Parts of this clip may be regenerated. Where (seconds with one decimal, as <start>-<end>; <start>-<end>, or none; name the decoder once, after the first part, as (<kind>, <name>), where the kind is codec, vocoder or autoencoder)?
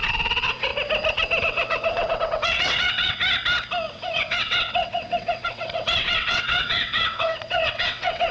0.0-0.7 (vocoder, WaveNeXt); 1.4-3.2; 3.9-8.3